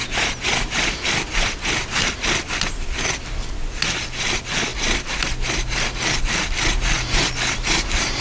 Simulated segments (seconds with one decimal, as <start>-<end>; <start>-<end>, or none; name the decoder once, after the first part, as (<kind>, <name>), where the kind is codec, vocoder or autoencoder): none